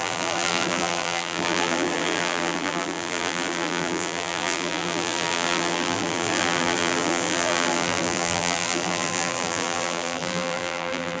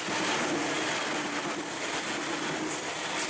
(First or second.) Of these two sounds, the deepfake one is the first